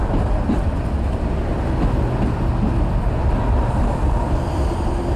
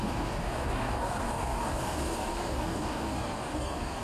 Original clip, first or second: first